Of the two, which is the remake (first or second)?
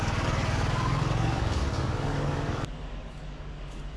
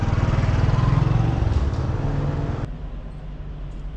first